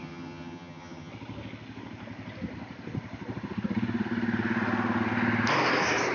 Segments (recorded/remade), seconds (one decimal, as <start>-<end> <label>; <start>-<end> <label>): 0.0-1.1 remade; 1.1-6.1 recorded